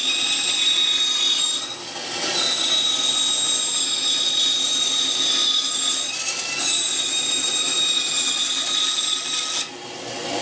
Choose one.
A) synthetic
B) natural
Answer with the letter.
B